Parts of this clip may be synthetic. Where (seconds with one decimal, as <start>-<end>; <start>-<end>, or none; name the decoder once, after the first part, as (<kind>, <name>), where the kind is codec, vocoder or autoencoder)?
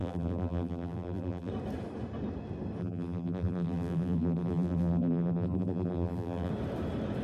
0.0-1.5 (vocoder, BigVGAN v2); 2.8-6.5